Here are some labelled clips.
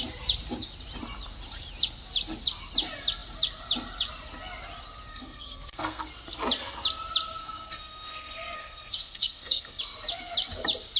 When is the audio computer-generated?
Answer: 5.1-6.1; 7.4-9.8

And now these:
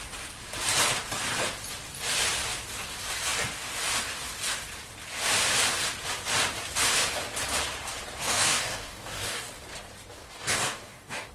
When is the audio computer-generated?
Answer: 8.2-9.5; 10.2-11.3

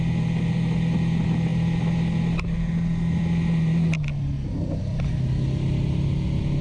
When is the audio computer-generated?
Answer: none

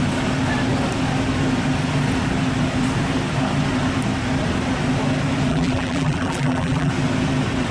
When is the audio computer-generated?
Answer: 5.5-6.9

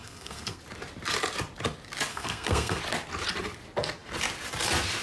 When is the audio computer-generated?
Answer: 0.0-0.6; 2.1-2.8

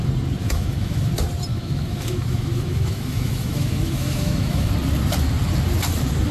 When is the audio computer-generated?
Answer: 0.4-1.1; 1.5-4.7

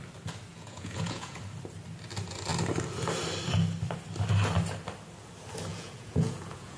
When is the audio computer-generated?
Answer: 0.5-1.4; 5.7-6.8